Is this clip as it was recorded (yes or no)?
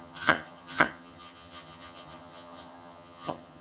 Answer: no